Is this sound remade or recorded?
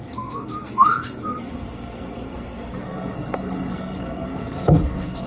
remade